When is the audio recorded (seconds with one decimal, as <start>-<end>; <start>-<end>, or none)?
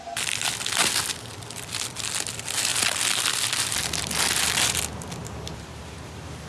0.0-6.5